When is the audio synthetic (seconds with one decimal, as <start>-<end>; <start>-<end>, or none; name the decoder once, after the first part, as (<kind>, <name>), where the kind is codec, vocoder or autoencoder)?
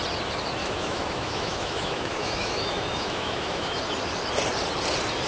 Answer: 0.6-3.8 (autoencoder, DAC-VAE)